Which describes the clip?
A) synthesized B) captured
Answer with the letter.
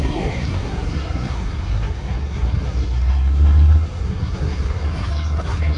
A